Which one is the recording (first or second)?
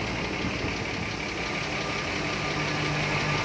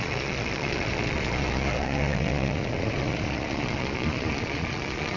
first